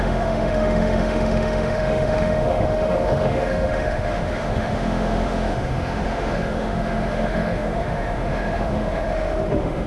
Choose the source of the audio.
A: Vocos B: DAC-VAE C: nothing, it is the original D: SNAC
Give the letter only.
B